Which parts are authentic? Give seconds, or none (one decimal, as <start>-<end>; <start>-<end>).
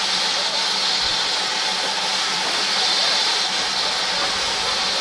0.0-0.6; 3.6-5.0